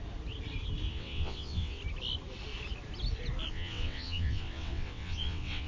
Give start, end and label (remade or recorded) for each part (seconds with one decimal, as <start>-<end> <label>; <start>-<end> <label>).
0.0-0.9 recorded; 0.9-1.8 remade; 1.8-3.5 recorded; 3.5-5.7 remade

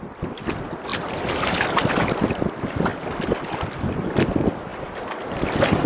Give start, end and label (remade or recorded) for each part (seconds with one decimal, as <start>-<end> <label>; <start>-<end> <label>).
0.0-2.9 remade; 2.9-4.0 recorded; 4.0-4.7 remade; 4.7-5.9 recorded